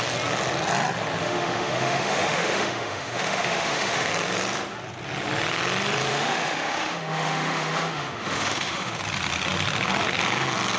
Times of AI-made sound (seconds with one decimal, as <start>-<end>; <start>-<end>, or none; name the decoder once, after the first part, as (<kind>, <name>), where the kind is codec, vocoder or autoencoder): 1.2-4.1 (autoencoder, DAC-VAE); 6.1-9.0